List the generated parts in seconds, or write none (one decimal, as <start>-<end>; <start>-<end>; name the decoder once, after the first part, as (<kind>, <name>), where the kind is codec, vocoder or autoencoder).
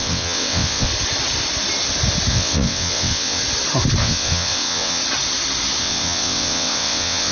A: 0.0-0.9 (vocoder, WaveNeXt); 2.3-3.4; 4.0-5.0; 5.8-7.3